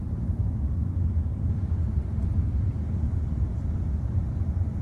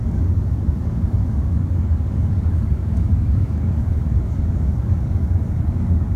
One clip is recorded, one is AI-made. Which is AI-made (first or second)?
second